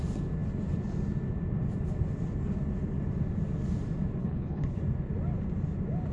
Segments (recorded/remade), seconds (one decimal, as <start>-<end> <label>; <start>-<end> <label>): 0.0-4.2 recorded; 4.2-4.8 remade; 4.8-6.1 recorded